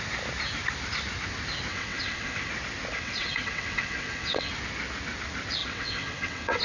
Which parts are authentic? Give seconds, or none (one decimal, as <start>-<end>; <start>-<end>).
0.0-1.7; 2.5-2.9; 4.5-5.6